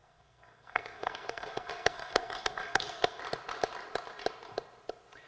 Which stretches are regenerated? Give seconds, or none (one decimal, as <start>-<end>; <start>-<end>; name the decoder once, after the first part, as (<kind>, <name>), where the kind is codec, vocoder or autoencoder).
0.0-3.2 (codec, SNAC)